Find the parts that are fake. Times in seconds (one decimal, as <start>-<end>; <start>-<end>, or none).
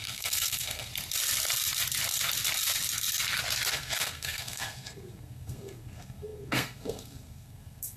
0.0-0.9; 3.7-8.0